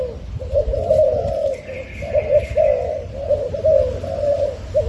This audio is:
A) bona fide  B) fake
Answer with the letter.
A